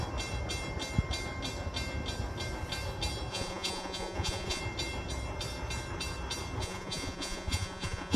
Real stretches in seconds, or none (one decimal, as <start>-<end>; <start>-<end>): 0.0-3.3; 4.6-6.6